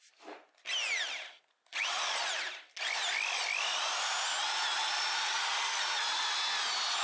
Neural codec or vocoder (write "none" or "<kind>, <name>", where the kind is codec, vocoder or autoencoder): none